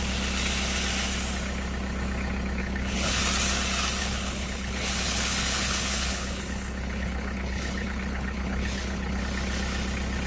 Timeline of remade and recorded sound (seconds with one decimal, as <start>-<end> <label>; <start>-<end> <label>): 0.0-2.6 recorded; 2.6-3.2 remade; 3.2-4.0 recorded; 4.0-9.2 remade; 9.2-10.3 recorded